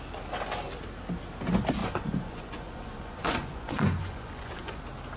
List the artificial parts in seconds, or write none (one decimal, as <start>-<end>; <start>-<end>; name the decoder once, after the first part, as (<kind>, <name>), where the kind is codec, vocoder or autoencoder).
1.8-4.8 (vocoder, Vocos)